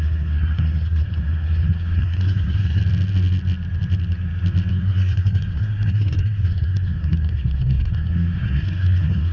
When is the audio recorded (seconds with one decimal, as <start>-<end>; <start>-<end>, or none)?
2.8-4.7